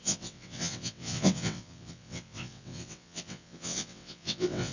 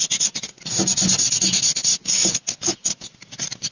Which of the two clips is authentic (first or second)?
second